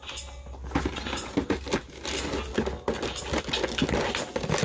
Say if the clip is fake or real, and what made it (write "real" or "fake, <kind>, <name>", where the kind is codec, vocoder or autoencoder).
real